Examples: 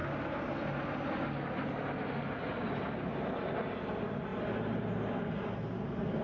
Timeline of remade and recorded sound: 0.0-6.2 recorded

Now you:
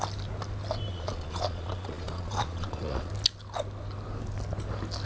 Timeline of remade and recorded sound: 0.0-0.9 recorded; 0.9-3.1 remade; 3.1-5.1 recorded

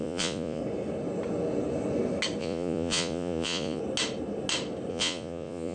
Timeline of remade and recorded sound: 0.0-0.6 remade; 0.6-2.4 recorded; 2.4-3.8 remade; 3.8-4.9 recorded; 4.9-5.7 remade

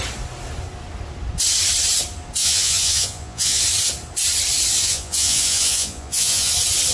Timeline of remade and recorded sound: 0.0-2.4 recorded; 2.4-3.6 remade; 3.6-4.8 recorded; 4.8-6.5 remade; 6.5-6.9 recorded

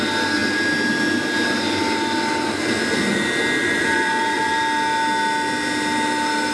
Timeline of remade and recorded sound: 0.0-3.6 recorded; 3.6-4.5 remade; 4.5-6.5 recorded

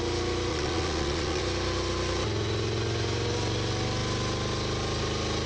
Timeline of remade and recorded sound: 0.0-0.5 recorded; 0.5-1.4 remade; 1.4-5.5 recorded

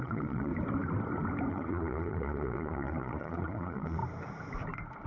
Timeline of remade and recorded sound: 0.0-0.5 remade; 0.5-1.5 recorded; 1.5-4.0 remade; 4.0-5.1 recorded